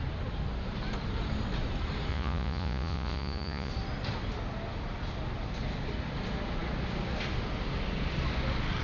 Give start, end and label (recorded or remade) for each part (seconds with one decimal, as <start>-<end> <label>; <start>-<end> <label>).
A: 0.0-2.1 recorded; 2.1-3.7 remade; 3.7-8.8 recorded